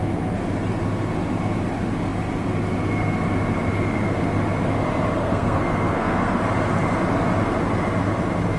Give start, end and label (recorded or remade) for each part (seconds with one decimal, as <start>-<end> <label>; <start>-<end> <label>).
0.0-5.2 recorded; 5.2-6.4 remade; 6.4-8.6 recorded